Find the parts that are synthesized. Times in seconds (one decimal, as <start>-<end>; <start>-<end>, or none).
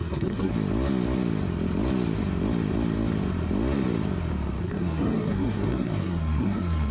0.0-0.5; 4.6-6.9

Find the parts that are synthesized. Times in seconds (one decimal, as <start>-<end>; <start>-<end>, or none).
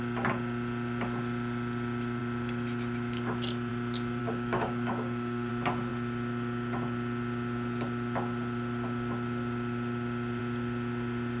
4.2-5.5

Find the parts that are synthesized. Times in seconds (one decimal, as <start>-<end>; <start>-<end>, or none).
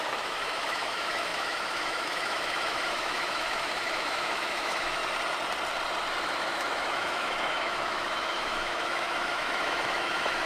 0.0-5.0; 6.2-10.5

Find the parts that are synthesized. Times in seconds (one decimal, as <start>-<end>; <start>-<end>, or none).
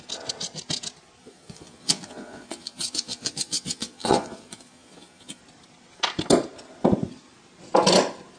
1.2-5.4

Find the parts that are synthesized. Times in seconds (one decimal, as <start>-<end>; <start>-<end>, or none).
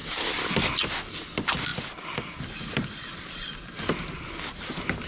0.0-0.9; 1.7-2.4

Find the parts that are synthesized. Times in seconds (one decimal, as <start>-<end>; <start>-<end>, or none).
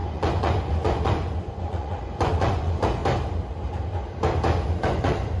0.0-3.0; 4.7-5.4